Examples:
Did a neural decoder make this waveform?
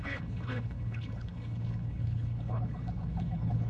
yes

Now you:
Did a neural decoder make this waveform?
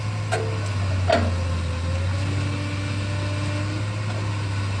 no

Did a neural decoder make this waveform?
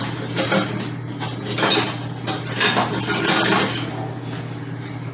no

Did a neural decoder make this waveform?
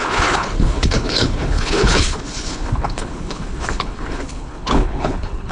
yes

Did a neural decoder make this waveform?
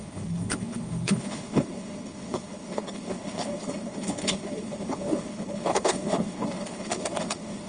yes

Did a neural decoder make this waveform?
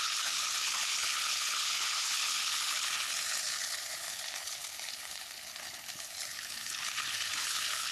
yes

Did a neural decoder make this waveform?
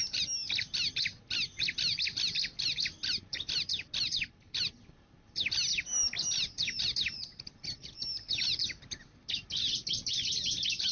no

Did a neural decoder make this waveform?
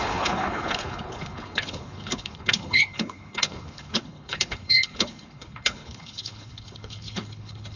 yes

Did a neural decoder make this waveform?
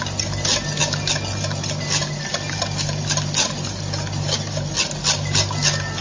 no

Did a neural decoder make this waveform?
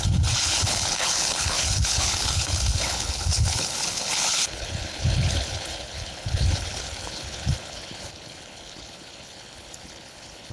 yes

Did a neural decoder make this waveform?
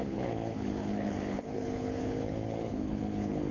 yes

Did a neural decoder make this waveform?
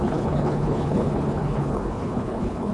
yes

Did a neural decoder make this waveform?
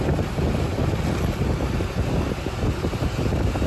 no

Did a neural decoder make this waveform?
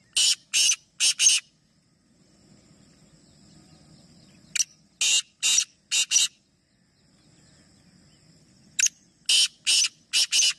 no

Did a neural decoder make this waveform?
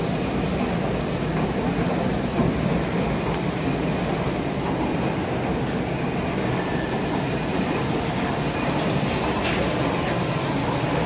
no